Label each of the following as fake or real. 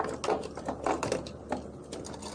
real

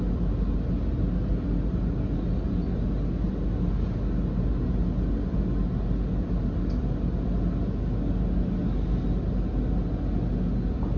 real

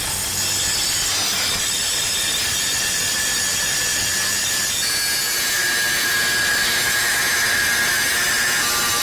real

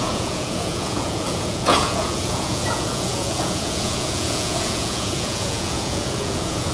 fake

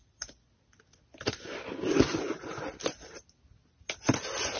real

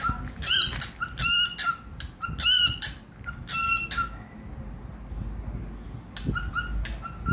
real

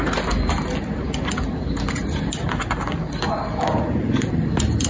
real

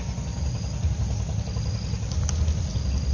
real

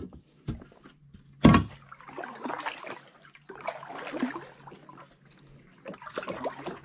real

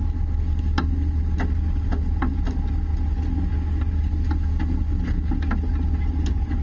real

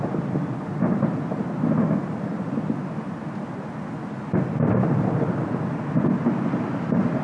real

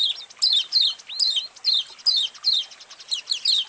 real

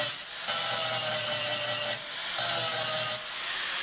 real